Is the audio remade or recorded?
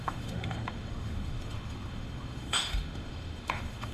remade